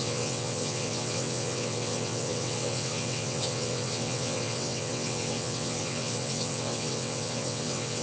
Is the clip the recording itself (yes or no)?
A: no